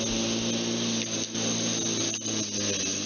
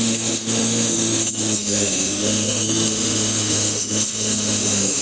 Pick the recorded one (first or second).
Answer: first